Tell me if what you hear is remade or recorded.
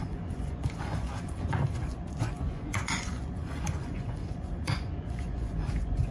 remade